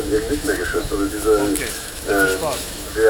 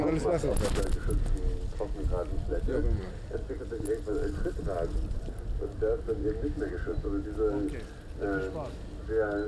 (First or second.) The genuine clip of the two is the second